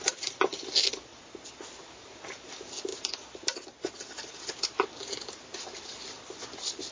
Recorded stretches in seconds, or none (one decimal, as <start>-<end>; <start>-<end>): 0.0-6.9